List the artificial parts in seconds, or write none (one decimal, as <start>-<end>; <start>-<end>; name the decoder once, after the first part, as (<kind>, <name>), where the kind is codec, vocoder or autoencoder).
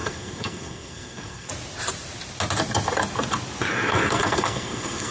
0.0-1.5 (codec, SNAC); 3.7-5.1